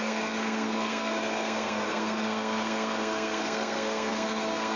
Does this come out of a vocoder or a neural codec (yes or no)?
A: yes